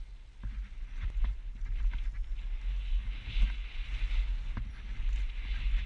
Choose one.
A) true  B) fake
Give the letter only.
A